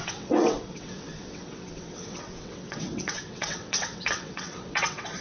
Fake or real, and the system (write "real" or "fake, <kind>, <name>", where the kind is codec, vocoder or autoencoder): fake, vocoder, WaveNeXt